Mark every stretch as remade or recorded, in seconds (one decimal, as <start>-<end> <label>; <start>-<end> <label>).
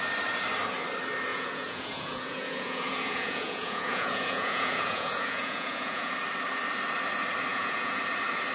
0.0-1.3 recorded; 1.3-6.1 remade; 6.1-7.5 recorded; 7.5-8.0 remade; 8.0-8.5 recorded